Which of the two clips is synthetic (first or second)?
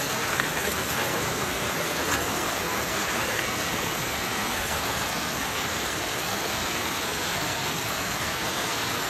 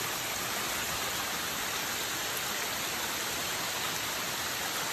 first